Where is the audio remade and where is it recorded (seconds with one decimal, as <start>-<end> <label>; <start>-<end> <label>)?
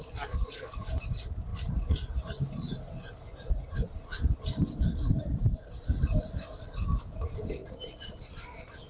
0.0-8.9 recorded